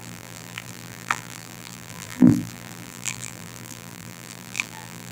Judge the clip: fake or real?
fake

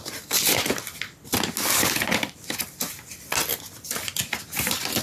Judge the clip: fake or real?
real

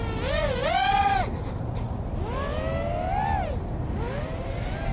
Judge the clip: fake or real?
real